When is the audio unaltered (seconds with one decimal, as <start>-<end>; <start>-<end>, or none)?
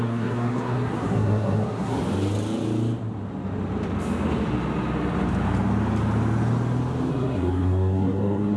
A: 2.0-7.1